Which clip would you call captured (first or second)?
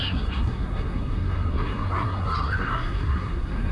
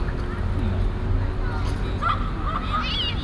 second